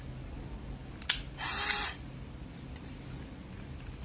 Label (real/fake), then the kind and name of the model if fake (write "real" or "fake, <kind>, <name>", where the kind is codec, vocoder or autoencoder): real